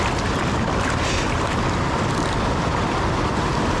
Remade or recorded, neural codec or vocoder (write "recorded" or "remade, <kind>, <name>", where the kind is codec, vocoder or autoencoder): recorded